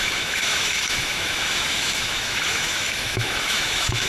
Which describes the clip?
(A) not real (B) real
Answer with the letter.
A